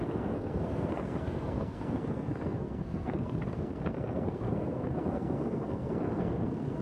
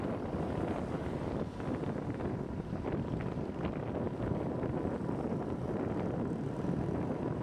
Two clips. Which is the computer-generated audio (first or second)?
first